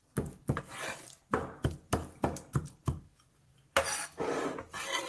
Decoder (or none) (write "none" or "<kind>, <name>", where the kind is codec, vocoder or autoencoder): none